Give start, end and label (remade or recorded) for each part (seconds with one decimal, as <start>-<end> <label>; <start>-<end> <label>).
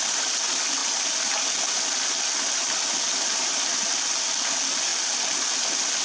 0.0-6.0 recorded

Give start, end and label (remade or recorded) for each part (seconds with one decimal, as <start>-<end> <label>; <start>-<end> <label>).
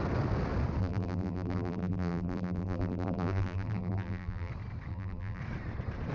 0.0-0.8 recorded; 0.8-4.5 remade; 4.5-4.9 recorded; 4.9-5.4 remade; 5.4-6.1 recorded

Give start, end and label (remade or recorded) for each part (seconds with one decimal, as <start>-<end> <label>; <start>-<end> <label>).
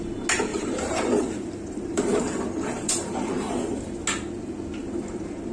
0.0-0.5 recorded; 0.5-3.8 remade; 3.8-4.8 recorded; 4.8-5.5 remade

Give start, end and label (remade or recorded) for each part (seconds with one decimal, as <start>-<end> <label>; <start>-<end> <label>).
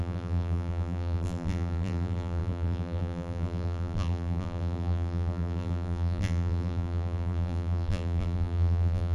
0.0-9.1 remade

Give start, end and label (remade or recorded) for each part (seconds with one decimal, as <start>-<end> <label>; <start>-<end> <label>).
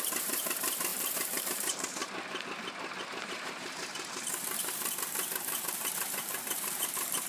0.0-2.0 remade; 2.0-3.2 recorded; 3.2-7.3 remade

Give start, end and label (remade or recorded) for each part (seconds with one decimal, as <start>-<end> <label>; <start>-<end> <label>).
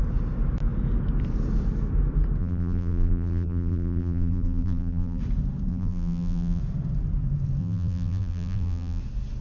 0.0-2.4 recorded; 2.4-5.2 remade; 5.2-5.7 recorded; 5.7-6.6 remade; 6.6-7.6 recorded; 7.6-9.0 remade; 9.0-9.4 recorded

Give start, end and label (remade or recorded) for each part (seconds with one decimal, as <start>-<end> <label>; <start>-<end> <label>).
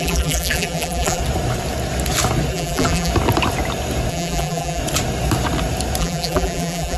0.0-1.2 remade; 1.2-2.5 recorded; 2.5-3.1 remade; 3.1-4.1 recorded; 4.1-4.8 remade; 4.8-6.0 recorded; 6.0-7.0 remade